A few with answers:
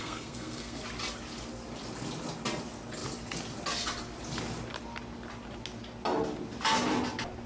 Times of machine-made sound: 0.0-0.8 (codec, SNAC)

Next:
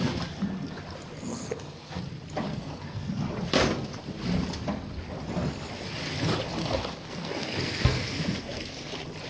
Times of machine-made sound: 1.3-2.0 (codec, SNAC); 2.5-3.1; 6.6-8.9

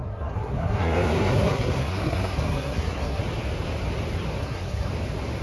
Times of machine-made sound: 0.0-3.2 (codec, SNAC); 4.4-4.9